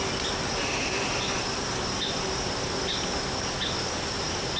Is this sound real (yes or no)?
yes